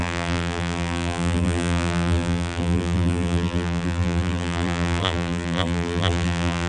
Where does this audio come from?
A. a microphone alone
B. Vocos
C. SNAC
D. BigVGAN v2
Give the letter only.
D